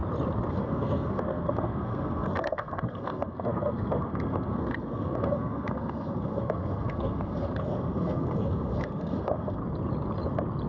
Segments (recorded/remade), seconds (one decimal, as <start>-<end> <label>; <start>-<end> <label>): 0.0-0.5 recorded; 0.5-9.6 remade; 9.6-10.7 recorded